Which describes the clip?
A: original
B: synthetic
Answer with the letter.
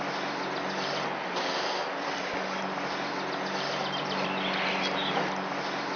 A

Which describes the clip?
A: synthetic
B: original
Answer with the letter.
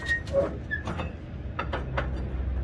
B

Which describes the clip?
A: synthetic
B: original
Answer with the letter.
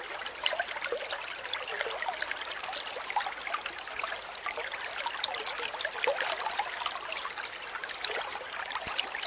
B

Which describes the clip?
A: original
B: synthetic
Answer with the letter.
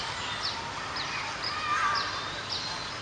A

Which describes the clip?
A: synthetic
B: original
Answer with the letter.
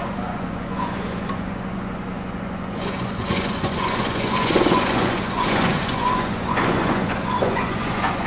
A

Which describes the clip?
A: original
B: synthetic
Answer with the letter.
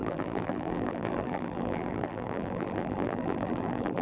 B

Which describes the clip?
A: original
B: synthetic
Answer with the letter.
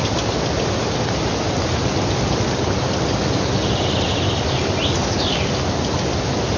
A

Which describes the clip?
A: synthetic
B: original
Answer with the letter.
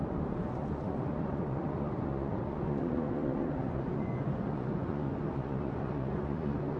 A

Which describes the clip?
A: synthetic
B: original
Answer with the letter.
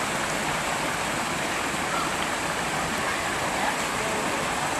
B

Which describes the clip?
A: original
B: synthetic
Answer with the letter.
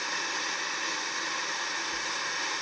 A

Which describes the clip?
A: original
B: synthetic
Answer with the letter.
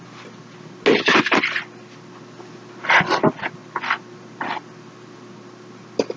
A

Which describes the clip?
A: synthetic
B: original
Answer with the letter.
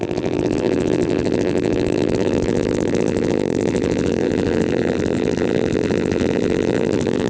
A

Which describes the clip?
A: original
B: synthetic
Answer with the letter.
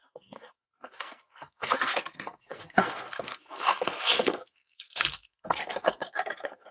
B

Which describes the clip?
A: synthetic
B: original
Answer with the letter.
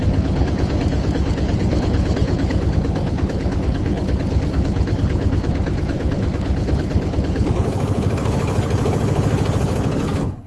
A